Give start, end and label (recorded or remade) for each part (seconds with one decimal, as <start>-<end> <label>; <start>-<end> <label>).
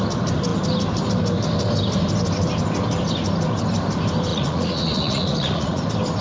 0.0-4.3 recorded; 4.3-5.8 remade; 5.8-6.2 recorded